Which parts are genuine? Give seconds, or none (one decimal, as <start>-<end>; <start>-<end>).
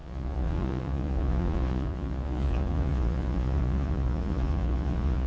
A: none